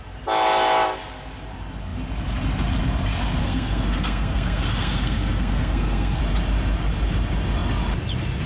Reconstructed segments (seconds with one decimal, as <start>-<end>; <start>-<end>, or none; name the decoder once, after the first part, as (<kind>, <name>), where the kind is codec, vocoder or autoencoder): 3.4-6.2 (codec, SNAC)